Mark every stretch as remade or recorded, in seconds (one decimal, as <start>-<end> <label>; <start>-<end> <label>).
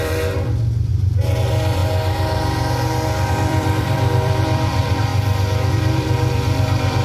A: 0.0-0.9 remade; 0.9-1.4 recorded; 1.4-1.8 remade; 1.8-3.3 recorded; 3.3-5.1 remade; 5.1-5.7 recorded; 5.7-7.0 remade